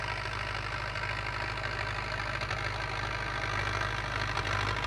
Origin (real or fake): real